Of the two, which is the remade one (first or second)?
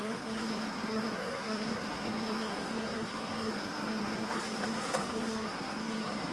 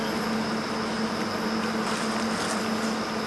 first